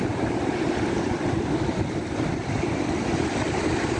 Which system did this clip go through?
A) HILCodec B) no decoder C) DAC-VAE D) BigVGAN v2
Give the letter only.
B